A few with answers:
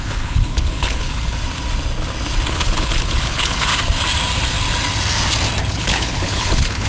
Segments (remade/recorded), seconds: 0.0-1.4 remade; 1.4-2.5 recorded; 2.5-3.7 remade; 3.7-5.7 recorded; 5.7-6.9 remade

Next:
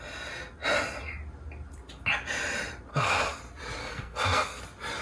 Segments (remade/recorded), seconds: 0.0-2.9 recorded; 2.9-3.4 remade; 3.4-3.8 recorded; 3.8-4.6 remade; 4.6-5.0 recorded